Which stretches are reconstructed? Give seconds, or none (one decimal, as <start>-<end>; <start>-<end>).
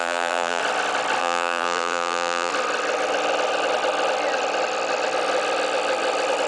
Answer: 0.0-0.6; 1.2-2.5